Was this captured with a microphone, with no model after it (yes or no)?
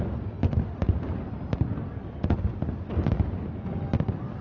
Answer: yes